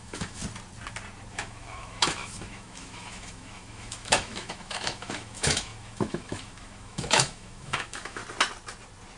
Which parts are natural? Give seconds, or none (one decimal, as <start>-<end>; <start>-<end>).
0.4-1.3; 8.2-9.2